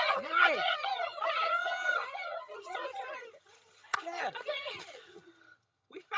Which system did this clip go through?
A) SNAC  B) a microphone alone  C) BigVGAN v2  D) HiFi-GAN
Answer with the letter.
D